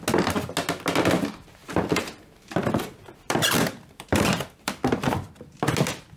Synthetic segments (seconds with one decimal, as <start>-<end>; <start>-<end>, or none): 1.6-5.3